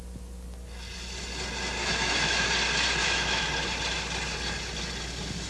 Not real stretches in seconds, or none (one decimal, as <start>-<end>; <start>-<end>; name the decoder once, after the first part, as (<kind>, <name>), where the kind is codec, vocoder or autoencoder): 1.8-2.5 (autoencoder, DAC-VAE); 3.0-3.5